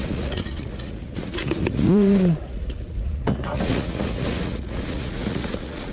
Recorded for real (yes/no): no